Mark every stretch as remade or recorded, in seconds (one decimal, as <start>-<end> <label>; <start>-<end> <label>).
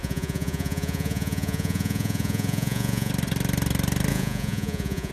0.0-3.1 remade; 3.1-4.1 recorded; 4.1-5.1 remade